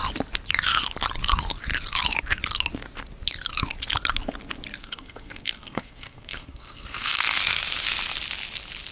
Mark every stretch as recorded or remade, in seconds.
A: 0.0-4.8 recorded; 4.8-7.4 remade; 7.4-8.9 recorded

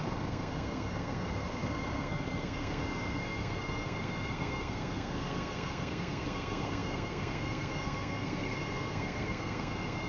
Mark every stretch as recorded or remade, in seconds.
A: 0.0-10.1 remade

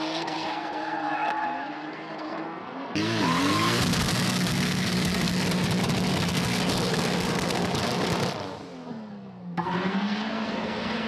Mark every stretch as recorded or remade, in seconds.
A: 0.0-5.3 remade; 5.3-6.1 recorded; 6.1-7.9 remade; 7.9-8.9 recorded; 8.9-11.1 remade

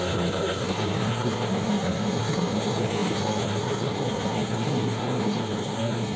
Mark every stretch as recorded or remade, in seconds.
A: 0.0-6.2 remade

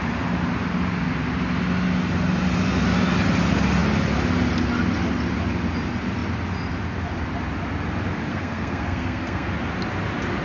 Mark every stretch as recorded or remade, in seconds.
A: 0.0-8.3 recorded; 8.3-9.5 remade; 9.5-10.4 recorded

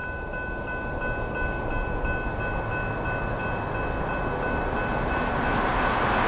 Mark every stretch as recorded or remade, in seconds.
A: 0.0-6.3 recorded

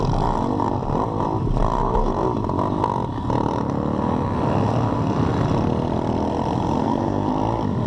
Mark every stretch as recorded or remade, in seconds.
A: 0.0-6.8 recorded; 6.8-7.3 remade; 7.3-7.9 recorded

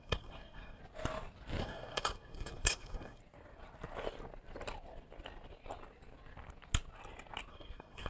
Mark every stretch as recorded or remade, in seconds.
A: 0.0-0.8 remade; 0.8-1.6 recorded; 1.6-3.2 remade; 3.2-7.5 recorded; 7.5-8.1 remade